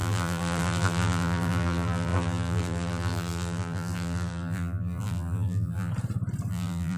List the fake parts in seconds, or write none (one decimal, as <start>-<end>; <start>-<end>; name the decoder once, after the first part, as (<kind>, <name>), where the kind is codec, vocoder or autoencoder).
0.0-5.9 (vocoder, BigVGAN v2); 6.5-7.0